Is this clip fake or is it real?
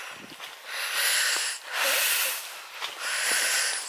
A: real